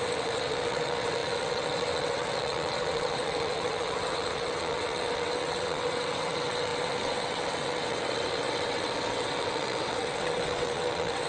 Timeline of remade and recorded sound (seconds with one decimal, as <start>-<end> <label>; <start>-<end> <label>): 0.0-11.3 remade